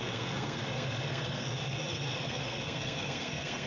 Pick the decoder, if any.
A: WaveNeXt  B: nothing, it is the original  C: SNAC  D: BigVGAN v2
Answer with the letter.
C